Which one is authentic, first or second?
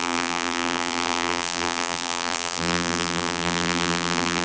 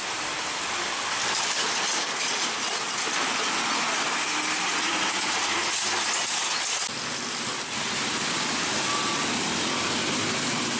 second